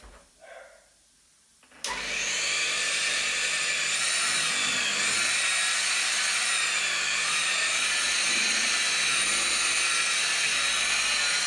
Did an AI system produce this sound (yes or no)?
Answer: no